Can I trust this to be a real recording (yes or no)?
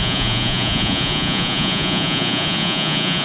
no